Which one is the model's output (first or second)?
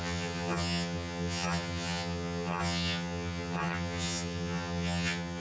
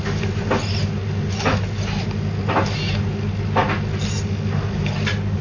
first